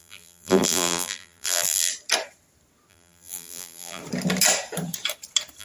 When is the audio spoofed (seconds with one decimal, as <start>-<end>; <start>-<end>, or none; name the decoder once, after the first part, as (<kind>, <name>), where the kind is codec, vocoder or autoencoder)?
0.0-1.9 (vocoder, BigVGAN v2); 2.9-4.0